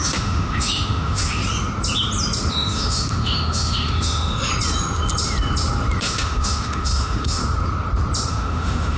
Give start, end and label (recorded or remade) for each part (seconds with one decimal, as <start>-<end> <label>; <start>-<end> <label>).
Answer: 0.0-1.4 remade; 1.4-2.5 recorded; 2.5-4.5 remade; 4.5-6.0 recorded; 6.0-7.4 remade; 7.4-8.3 recorded; 8.3-9.0 remade